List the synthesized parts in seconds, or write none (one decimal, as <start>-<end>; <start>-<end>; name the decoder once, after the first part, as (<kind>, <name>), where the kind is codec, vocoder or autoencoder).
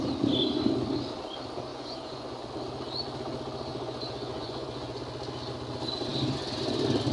1.7-2.5 (vocoder, Vocos); 3.7-5.0